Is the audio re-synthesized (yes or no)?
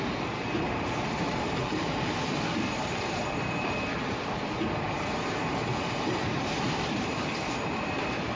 yes